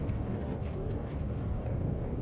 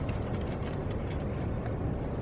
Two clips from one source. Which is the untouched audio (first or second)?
second